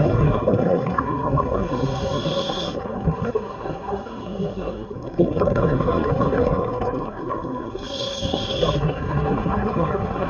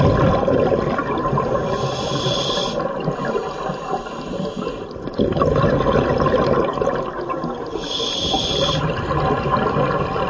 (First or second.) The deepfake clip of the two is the first